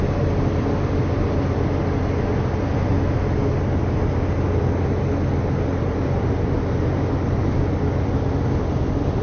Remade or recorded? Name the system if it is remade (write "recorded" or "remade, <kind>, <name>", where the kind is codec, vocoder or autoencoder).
recorded